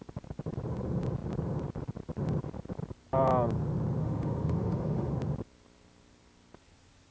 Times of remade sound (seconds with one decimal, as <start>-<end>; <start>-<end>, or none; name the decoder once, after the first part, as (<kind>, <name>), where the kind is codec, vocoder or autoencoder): 4.0-5.1 (autoencoder, DAC-VAE)